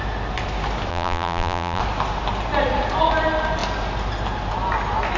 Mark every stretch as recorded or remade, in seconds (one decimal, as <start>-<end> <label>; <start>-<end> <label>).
0.0-0.9 recorded; 0.9-1.8 remade; 1.8-5.2 recorded